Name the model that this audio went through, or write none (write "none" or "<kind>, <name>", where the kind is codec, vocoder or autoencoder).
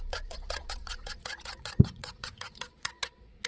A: vocoder, Vocos